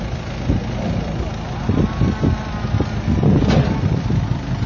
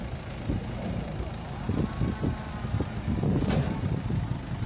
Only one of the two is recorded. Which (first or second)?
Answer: first